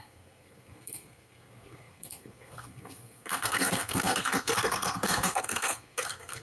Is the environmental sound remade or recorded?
remade